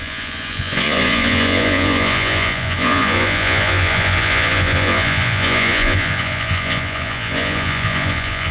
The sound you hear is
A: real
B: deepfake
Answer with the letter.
B